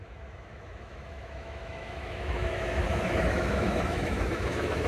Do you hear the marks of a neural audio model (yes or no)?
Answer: yes